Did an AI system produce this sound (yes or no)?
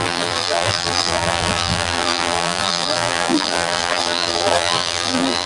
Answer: yes